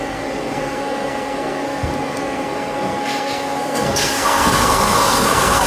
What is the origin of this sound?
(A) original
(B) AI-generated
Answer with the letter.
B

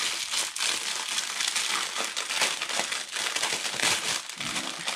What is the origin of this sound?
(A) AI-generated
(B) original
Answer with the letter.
B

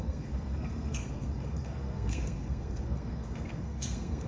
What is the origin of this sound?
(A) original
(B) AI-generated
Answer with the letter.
B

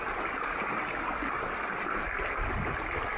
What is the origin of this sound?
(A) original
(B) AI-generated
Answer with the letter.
A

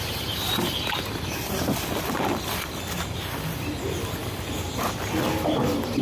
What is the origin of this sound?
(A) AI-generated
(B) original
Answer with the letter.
B